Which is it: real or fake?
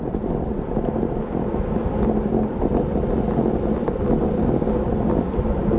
real